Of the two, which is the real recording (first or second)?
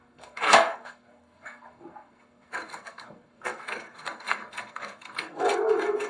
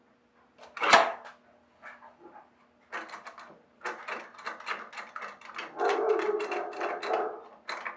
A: second